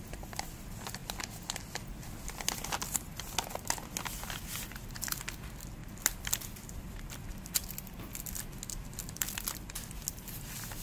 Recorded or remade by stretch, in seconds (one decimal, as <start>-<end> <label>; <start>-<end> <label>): 0.0-10.8 recorded